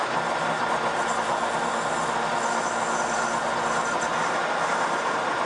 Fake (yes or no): no